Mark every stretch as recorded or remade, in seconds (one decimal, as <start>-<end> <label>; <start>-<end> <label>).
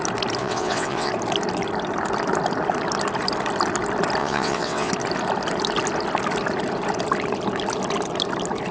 0.0-0.4 recorded; 0.4-1.1 remade; 1.1-4.2 recorded; 4.2-4.9 remade; 4.9-8.7 recorded